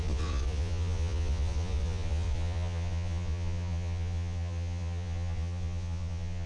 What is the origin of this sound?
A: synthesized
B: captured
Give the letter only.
A